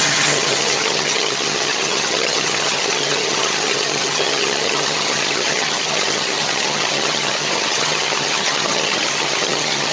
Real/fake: fake